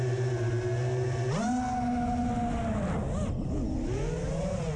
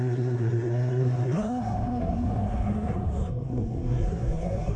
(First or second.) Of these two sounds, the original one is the first